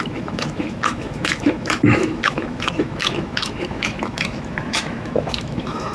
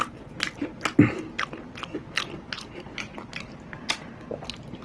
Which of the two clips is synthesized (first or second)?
first